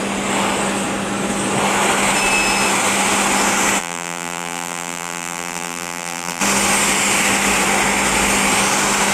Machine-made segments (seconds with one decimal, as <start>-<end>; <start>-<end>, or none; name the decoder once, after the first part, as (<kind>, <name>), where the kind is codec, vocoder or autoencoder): 3.8-6.4 (vocoder, BigVGAN v2)